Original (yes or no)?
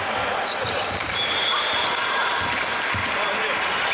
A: yes